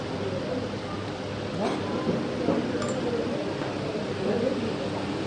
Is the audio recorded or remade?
recorded